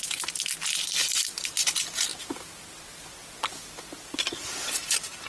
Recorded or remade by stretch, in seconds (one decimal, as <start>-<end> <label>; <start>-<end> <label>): 0.0-5.3 recorded

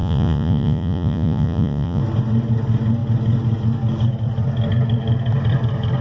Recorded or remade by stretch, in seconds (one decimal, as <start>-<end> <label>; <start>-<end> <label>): 0.0-2.0 remade; 2.0-6.0 recorded

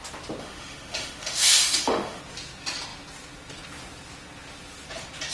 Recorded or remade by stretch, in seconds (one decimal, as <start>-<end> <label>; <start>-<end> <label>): 0.0-0.4 recorded; 0.4-2.2 remade; 2.2-5.3 recorded

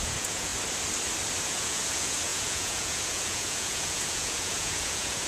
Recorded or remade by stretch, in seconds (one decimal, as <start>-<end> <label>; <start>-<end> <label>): 0.0-0.5 remade; 0.5-1.4 recorded; 1.4-5.3 remade

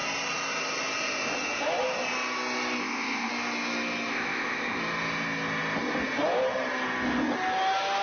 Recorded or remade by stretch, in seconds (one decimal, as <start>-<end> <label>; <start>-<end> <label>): 0.0-2.8 recorded; 2.8-3.3 remade; 3.3-4.1 recorded; 4.1-4.8 remade; 4.8-8.0 recorded

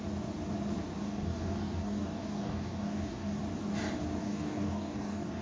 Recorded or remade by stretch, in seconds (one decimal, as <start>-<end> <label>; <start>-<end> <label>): 0.0-1.0 recorded; 1.0-3.4 remade; 3.4-4.2 recorded; 4.2-5.4 remade

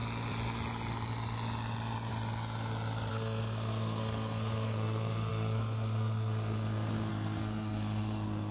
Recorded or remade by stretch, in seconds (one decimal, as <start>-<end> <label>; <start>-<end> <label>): 0.0-3.1 recorded; 3.1-8.5 remade

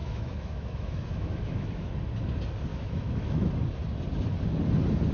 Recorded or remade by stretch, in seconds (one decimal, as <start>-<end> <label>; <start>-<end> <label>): 0.0-1.9 remade; 1.9-2.7 recorded; 2.7-3.5 remade; 3.5-5.1 recorded